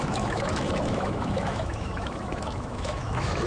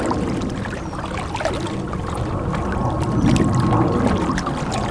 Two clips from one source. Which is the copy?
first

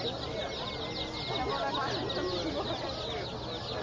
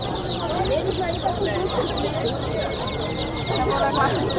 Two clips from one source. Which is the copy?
second